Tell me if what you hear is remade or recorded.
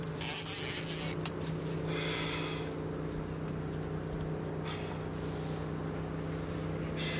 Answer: recorded